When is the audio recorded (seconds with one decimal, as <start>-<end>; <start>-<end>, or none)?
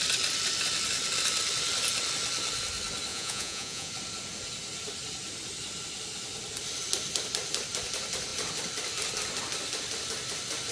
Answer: 0.0-3.1; 3.9-10.7